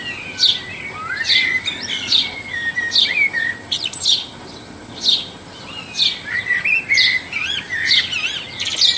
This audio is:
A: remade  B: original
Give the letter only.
B